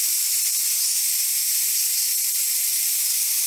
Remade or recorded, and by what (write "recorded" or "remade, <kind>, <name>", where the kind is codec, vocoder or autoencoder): recorded